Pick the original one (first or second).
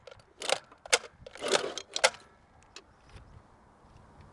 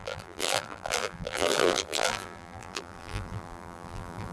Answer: first